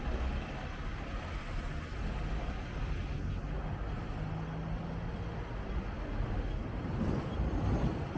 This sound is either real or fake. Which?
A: real